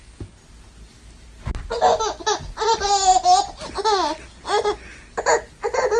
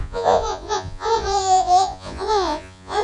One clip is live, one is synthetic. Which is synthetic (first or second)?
second